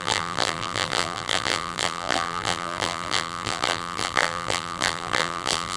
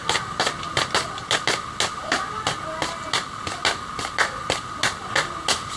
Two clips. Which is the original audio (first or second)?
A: second